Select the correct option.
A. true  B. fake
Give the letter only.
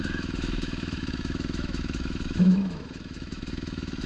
B